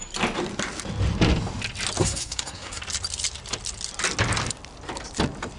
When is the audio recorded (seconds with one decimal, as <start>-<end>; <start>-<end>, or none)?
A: 0.0-2.0; 2.8-5.6